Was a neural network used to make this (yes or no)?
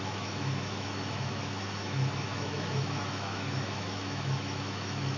yes